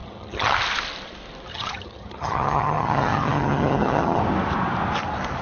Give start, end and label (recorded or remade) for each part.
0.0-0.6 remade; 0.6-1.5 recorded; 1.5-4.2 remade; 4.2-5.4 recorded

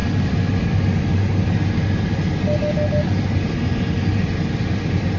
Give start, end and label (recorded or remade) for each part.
0.0-5.2 recorded

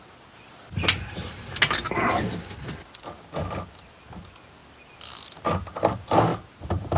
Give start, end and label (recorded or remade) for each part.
0.0-7.0 recorded

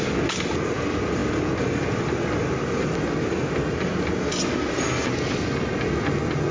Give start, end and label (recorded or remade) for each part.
0.0-6.5 recorded